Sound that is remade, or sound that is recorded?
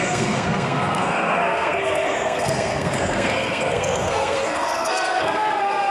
remade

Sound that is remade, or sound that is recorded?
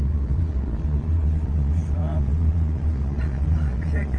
remade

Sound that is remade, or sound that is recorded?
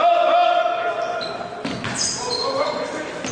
recorded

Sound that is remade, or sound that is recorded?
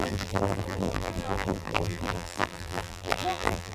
remade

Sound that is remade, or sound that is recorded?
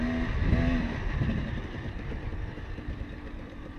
recorded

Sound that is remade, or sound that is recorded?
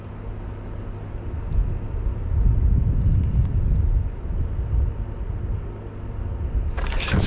recorded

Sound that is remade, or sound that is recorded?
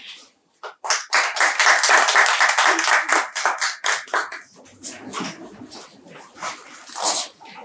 recorded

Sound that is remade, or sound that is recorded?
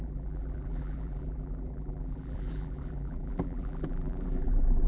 remade